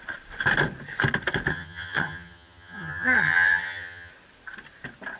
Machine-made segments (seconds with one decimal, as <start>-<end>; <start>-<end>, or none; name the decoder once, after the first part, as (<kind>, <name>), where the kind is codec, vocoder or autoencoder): 1.5-4.1 (vocoder, HiFi-GAN)